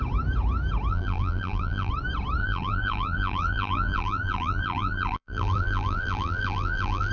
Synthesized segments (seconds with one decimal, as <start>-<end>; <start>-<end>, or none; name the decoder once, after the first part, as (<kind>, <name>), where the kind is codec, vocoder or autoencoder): 0.9-1.9 (vocoder, BigVGAN v2); 2.4-7.1